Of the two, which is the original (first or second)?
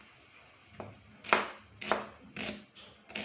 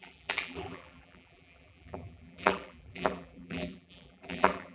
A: first